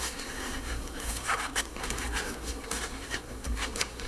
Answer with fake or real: fake